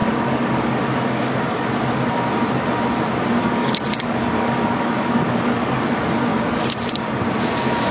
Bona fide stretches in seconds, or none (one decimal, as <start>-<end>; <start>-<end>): 1.7-3.4; 5.8-6.3; 7.2-7.9